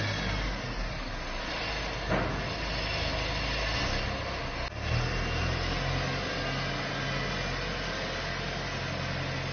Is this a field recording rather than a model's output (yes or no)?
yes